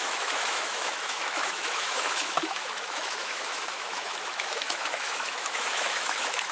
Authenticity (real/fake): fake